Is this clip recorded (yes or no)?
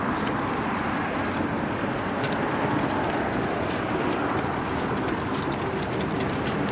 yes